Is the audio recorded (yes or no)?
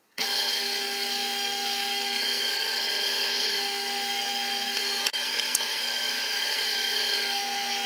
no